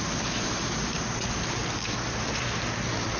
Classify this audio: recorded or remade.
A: recorded